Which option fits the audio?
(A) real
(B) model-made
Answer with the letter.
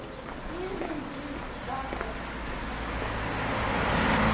A